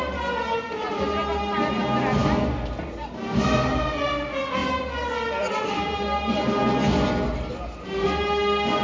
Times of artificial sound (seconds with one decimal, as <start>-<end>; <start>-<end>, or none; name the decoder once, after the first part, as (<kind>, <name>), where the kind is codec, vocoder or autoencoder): none